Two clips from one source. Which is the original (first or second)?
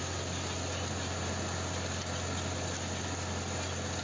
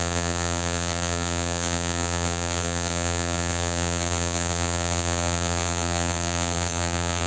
first